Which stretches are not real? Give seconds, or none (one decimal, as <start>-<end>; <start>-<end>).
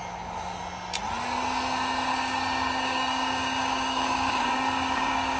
2.1-5.4